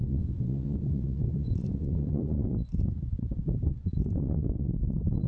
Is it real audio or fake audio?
fake